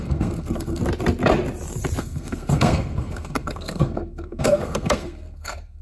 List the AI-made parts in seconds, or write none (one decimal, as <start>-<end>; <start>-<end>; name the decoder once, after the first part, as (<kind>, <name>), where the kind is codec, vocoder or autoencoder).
0.0-0.8 (codec, SNAC); 2.0-5.8

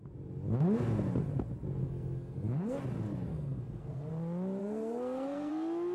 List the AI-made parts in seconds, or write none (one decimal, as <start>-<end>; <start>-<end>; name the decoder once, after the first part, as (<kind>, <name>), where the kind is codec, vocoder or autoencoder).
1.8-2.8 (codec, SNAC); 3.3-4.1; 4.6-5.5

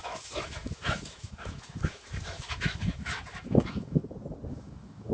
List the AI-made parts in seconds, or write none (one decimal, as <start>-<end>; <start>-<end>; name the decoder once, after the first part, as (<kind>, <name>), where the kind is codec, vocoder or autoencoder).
0.0-4.0 (autoencoder, DAC-VAE); 4.5-5.1

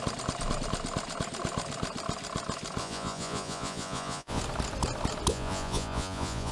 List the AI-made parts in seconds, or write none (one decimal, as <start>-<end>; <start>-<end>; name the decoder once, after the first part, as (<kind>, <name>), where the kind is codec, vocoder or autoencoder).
2.8-4.4 (vocoder, Vocos); 5.3-6.5

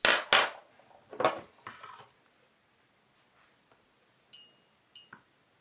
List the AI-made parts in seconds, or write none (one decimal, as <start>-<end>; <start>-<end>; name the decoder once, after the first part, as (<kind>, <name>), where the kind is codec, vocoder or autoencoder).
none

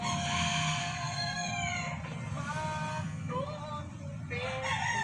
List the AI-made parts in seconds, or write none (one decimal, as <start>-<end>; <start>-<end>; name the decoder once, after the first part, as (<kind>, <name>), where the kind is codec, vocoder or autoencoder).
0.8-1.5 (codec, SNAC); 2.9-3.6

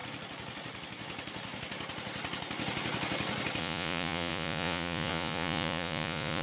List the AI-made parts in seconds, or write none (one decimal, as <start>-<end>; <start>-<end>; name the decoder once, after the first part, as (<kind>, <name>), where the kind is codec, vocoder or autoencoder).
3.6-6.4 (vocoder, Vocos)